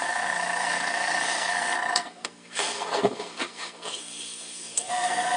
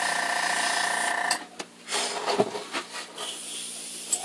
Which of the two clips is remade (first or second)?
first